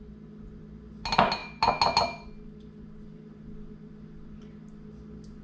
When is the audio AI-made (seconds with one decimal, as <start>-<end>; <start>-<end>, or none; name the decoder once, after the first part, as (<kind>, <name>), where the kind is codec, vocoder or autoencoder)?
none